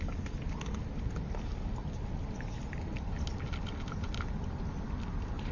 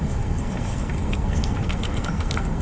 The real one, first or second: first